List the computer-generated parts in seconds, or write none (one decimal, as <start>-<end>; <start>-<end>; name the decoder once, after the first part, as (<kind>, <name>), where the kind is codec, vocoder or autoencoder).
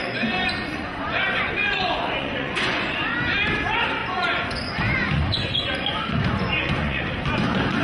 0.0-3.0 (vocoder, Vocos); 4.0-7.0